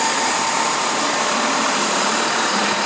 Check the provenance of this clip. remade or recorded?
remade